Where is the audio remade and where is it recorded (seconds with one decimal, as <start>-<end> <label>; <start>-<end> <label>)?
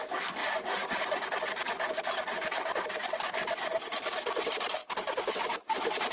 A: 0.0-4.8 remade; 4.8-5.3 recorded; 5.3-6.1 remade